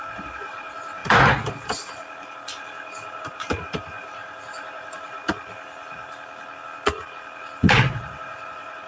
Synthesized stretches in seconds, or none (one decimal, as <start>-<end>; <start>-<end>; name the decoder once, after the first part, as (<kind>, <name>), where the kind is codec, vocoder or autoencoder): 0.0-1.0 (vocoder, BigVGAN v2); 3.2-5.2; 7.9-8.9